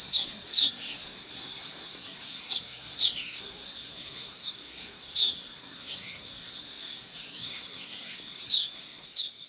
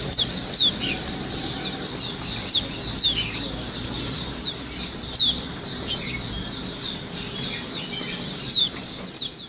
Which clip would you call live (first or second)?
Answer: second